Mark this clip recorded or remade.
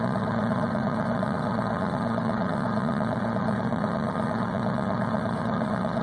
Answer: remade